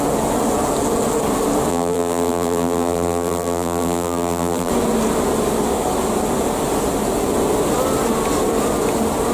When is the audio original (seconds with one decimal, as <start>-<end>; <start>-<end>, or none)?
0.0-1.7; 4.7-9.3